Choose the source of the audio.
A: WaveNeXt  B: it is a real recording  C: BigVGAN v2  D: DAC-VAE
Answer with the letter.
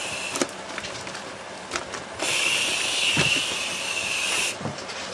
C